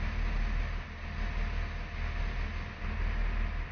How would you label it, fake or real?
real